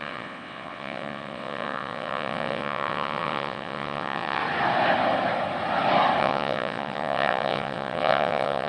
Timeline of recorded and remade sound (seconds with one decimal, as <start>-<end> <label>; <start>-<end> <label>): 0.0-4.4 remade; 4.4-6.2 recorded; 6.2-8.7 remade